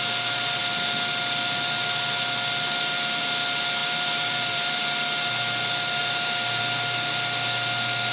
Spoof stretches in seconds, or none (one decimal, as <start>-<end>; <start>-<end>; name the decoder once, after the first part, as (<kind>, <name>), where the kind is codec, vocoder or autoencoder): 3.8-4.8 (vocoder, BigVGAN v2)